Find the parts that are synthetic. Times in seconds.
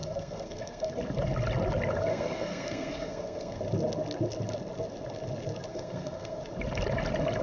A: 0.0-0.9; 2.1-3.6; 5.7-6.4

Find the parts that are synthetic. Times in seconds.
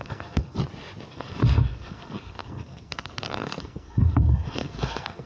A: 0.0-0.6; 1.1-5.3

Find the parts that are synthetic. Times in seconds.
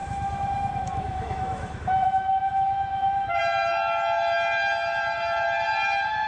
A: 0.0-3.4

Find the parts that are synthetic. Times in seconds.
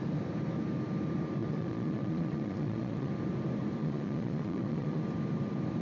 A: 1.4-3.1; 3.8-5.0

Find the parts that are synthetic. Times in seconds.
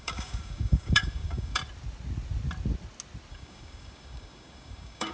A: 0.0-1.6; 3.3-5.1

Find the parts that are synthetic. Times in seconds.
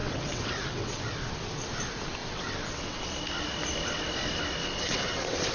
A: 0.0-1.0; 2.2-3.0; 4.6-5.5